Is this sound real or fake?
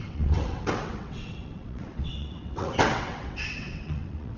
fake